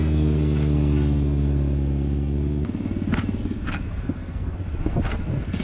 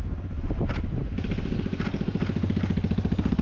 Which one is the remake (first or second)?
first